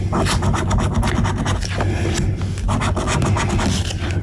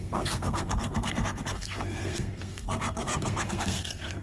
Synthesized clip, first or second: second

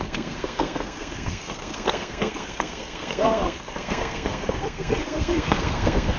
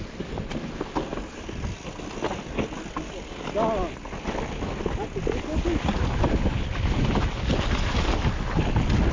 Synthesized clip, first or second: first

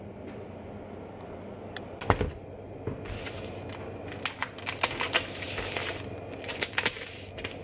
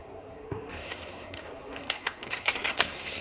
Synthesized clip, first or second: second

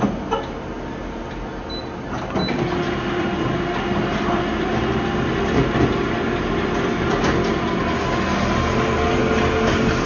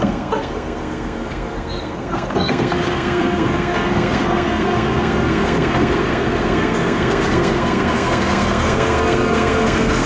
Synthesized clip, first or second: second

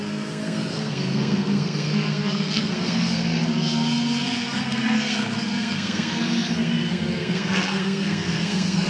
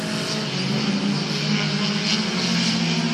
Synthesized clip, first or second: first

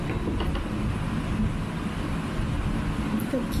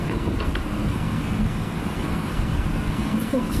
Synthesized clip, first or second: second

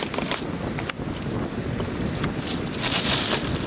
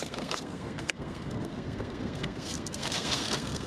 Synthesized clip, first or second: second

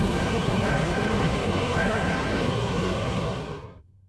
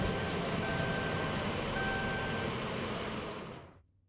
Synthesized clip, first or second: first